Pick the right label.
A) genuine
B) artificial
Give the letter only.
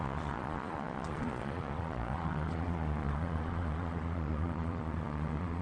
B